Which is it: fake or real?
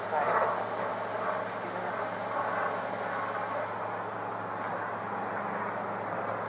real